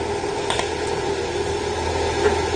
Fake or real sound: real